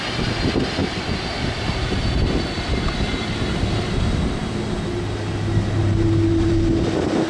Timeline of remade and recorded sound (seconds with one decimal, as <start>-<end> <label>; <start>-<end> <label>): 0.0-0.8 recorded; 0.8-2.0 remade; 2.0-7.3 recorded